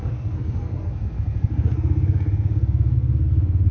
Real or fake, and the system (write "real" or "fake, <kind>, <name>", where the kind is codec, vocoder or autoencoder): fake, codec, SNAC